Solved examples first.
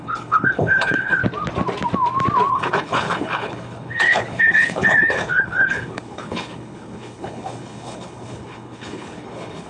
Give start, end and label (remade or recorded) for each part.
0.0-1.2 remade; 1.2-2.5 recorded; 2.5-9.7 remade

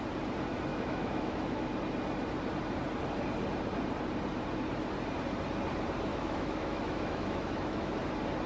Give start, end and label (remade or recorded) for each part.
0.0-0.7 recorded; 0.7-1.6 remade; 1.6-6.1 recorded; 6.1-7.9 remade; 7.9-8.5 recorded

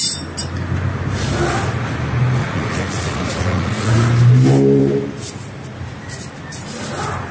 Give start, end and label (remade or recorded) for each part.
0.0-2.4 recorded; 2.4-3.9 remade; 3.9-7.3 recorded

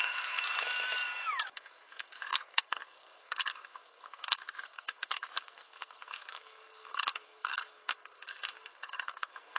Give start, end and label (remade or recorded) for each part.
0.0-0.4 remade; 0.4-1.5 recorded; 1.5-9.6 remade

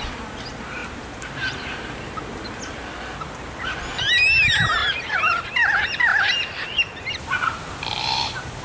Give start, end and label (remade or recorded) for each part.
0.0-0.8 recorded; 0.8-2.2 remade; 2.2-4.8 recorded; 4.8-5.5 remade; 5.5-6.1 recorded; 6.1-7.7 remade; 7.7-8.6 recorded